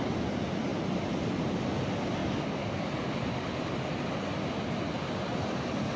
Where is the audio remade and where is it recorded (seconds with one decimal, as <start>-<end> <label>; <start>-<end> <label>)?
0.0-6.0 recorded